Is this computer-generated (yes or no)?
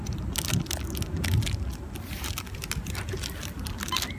no